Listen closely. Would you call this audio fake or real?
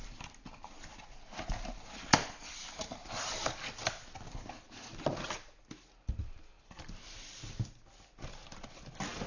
real